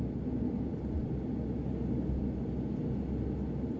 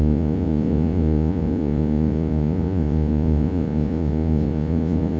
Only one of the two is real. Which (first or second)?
first